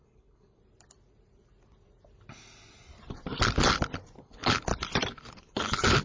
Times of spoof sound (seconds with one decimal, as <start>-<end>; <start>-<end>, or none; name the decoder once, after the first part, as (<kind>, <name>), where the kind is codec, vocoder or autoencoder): 0.0-0.6 (codec, HILCodec); 4.2-4.7; 5.2-6.0